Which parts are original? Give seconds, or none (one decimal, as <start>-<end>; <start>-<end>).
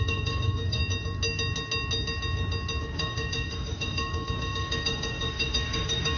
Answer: 0.8-2.8